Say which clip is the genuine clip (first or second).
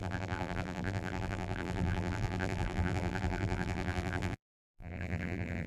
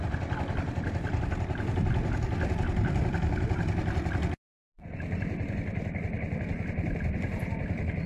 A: second